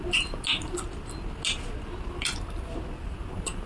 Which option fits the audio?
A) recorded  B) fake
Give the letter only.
A